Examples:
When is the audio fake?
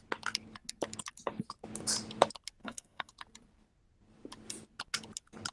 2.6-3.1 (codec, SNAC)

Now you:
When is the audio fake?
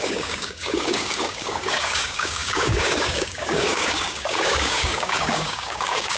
0.0-6.2 (codec, DAC)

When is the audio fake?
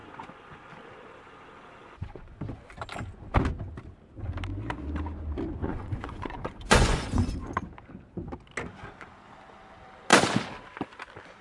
0.0-0.7 (vocoder, Vocos); 1.8-2.4; 5.6-7.5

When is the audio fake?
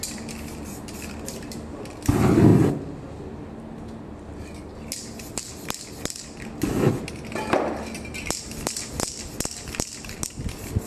none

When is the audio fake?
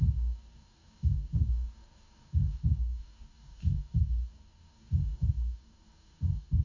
0.0-6.6 (codec, DAC)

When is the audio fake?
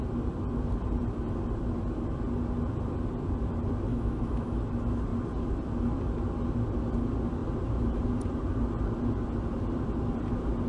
3.9-4.6 (autoencoder, DAC-VAE)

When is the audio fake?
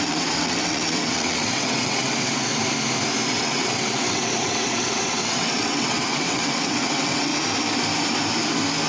0.0-2.5 (vocoder, WaveNeXt); 3.3-7.3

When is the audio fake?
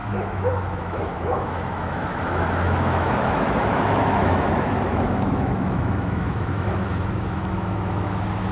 0.0-8.5 (autoencoder, DAC-VAE)